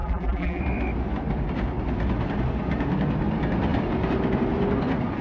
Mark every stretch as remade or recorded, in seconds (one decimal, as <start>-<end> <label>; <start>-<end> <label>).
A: 0.0-0.6 remade; 0.6-5.2 recorded